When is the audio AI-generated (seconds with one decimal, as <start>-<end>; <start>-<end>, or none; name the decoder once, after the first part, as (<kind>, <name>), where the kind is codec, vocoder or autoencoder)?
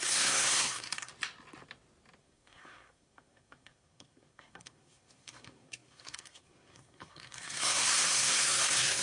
0.0-1.1 (codec, SNAC); 2.2-9.0